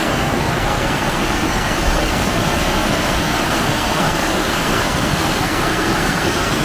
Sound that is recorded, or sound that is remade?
remade